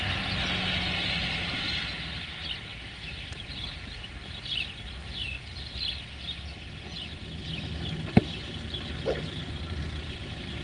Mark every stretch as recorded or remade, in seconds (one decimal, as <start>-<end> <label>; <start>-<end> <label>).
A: 0.0-1.2 recorded; 1.2-1.7 remade; 1.7-2.7 recorded; 2.7-4.1 remade; 4.1-6.9 recorded; 6.9-9.8 remade; 9.8-10.6 recorded

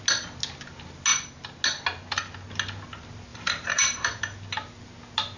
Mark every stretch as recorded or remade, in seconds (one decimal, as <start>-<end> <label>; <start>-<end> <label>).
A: 0.0-3.3 recorded; 3.3-4.2 remade; 4.2-5.4 recorded

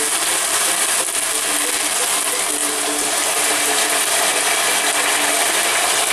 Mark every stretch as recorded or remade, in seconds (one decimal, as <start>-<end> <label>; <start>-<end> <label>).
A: 0.0-2.6 recorded; 2.6-4.2 remade; 4.2-6.1 recorded

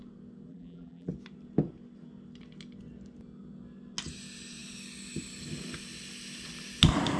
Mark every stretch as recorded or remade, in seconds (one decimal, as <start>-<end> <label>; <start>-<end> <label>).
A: 0.0-0.5 recorded; 0.5-1.1 remade; 1.1-7.2 recorded

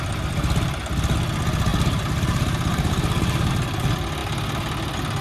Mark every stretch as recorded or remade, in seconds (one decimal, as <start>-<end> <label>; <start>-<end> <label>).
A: 0.0-1.7 recorded; 1.7-3.5 remade; 3.5-5.2 recorded